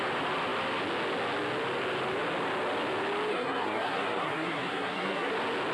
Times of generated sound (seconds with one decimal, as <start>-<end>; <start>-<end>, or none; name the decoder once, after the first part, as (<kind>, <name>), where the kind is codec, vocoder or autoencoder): 3.3-5.3 (codec, SNAC)